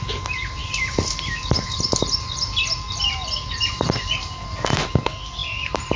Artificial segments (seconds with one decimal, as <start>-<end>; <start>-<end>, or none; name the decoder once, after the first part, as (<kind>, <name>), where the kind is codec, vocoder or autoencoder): none